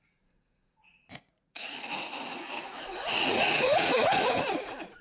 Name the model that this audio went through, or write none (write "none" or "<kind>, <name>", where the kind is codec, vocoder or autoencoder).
vocoder, Vocos